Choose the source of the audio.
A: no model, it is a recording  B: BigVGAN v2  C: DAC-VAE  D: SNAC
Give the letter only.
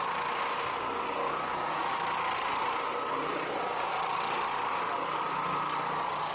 A